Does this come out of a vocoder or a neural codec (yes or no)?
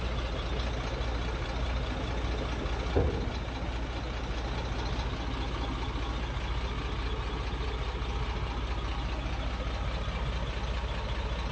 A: no